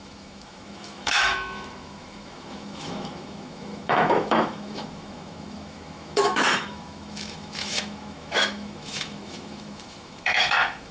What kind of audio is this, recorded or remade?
remade